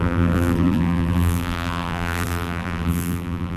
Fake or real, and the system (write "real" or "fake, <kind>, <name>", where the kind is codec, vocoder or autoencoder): fake, vocoder, BigVGAN v2